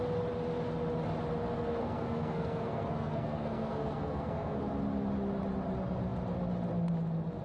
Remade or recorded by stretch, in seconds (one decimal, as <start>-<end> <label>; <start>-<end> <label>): 0.0-1.8 recorded; 1.8-4.7 remade; 4.7-7.4 recorded